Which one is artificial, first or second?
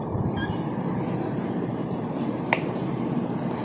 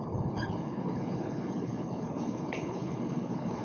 second